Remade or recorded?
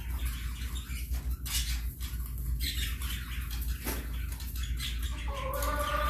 recorded